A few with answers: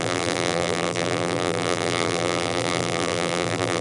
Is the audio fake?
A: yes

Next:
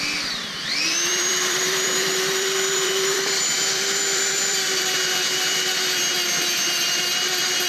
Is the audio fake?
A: yes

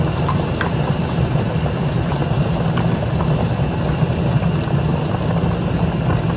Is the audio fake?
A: no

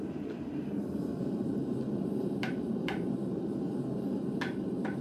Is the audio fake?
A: yes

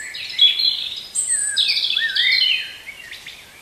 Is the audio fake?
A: yes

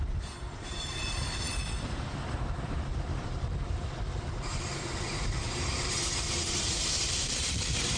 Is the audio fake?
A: yes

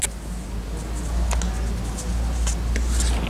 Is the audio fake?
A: no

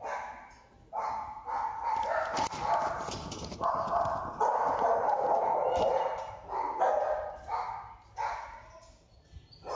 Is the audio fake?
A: no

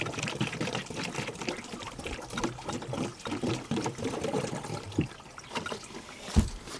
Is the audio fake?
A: yes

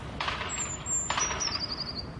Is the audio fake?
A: no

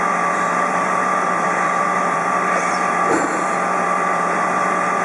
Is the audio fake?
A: yes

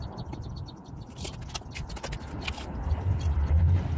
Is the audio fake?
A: no